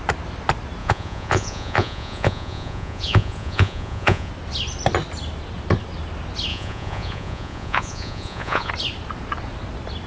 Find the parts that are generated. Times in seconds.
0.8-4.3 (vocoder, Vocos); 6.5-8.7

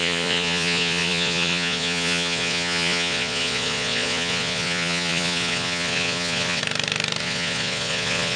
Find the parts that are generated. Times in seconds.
0.0-6.6 (vocoder, Vocos); 7.2-8.4

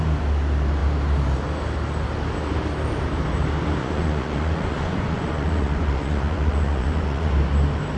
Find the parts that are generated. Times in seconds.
3.8-7.3 (vocoder, Vocos)

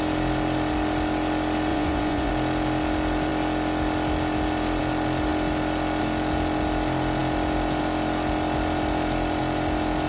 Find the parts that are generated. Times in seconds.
1.7-2.3 (vocoder, Vocos)